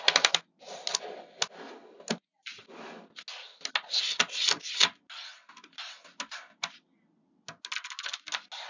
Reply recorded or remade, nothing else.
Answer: recorded